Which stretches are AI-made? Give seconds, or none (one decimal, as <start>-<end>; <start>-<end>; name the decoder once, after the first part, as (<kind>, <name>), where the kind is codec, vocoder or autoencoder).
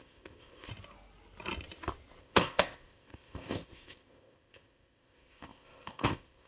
0.0-0.7 (codec, ZipCodec); 2.2-6.5